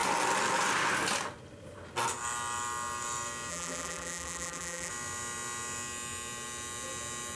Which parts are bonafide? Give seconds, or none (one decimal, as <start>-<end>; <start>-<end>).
0.0-3.5; 4.9-7.4